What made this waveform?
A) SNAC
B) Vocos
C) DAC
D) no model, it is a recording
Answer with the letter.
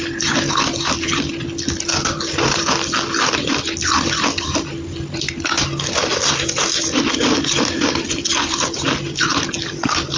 D